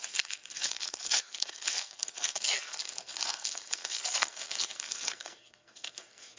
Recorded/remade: remade